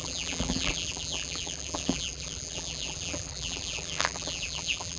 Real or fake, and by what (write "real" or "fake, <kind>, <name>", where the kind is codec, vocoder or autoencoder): fake, vocoder, BigVGAN v2